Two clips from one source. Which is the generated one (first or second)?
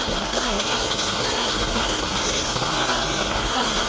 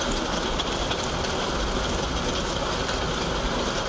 first